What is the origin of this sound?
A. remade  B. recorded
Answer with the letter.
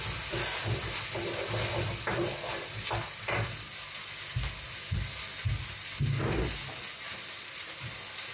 B